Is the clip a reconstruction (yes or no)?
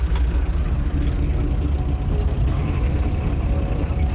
no